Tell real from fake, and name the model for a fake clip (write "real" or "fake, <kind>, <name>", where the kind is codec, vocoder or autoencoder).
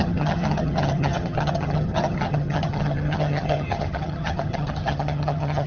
fake, vocoder, HiFi-GAN